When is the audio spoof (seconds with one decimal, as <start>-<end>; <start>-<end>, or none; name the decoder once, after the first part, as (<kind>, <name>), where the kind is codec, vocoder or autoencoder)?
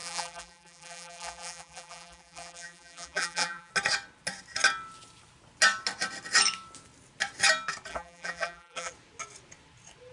0.0-3.7 (vocoder, BigVGAN v2); 7.9-8.9